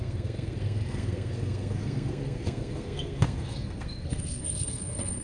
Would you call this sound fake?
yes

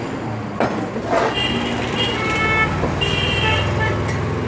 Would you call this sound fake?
no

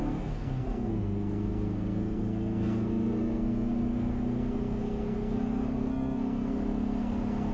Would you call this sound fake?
yes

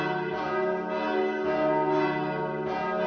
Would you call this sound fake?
no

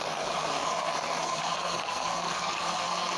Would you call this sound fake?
yes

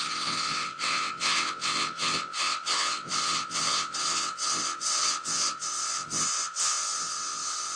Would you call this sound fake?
yes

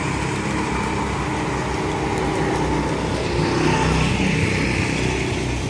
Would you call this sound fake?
no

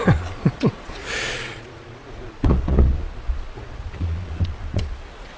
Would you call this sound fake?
yes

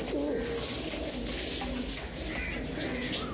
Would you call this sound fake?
no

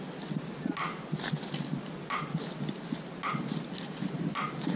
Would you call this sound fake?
no